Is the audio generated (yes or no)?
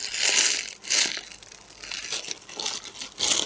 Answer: no